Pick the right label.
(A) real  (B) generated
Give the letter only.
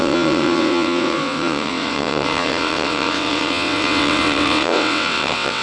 B